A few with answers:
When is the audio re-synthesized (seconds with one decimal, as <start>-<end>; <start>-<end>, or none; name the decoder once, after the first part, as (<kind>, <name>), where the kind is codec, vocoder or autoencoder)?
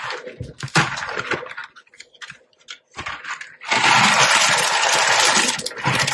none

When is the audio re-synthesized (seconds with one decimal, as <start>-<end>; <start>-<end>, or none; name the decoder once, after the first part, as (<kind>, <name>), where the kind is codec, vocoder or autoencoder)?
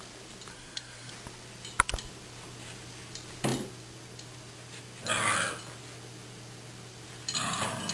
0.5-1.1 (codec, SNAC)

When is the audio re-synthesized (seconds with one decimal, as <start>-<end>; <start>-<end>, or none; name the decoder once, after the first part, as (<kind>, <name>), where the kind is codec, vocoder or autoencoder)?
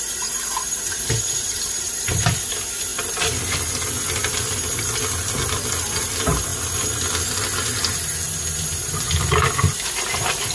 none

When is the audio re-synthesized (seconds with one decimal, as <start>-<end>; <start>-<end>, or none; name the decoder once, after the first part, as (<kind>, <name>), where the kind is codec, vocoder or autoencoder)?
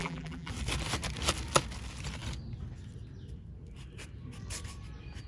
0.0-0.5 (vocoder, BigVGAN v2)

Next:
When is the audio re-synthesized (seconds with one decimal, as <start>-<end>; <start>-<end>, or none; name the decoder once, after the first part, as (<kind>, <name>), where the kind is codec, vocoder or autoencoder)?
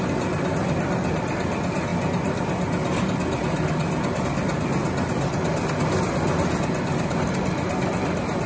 none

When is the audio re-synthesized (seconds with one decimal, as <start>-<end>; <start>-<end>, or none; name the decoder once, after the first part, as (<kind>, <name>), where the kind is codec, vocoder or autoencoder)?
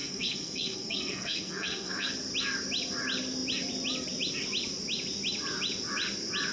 0.0-2.1 (codec, SNAC)